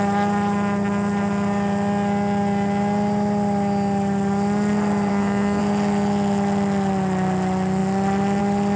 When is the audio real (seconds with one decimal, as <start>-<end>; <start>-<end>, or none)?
0.0-5.1; 5.6-8.8